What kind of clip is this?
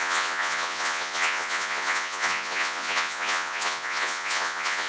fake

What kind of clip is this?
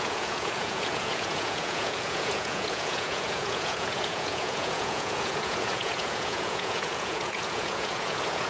fake